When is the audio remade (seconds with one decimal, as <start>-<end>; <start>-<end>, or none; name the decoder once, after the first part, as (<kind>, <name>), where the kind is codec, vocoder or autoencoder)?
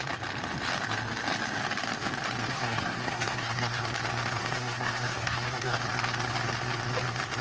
2.5-3.8 (codec, SNAC); 4.4-5.8